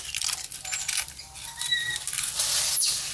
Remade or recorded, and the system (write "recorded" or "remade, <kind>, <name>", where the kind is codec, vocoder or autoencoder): recorded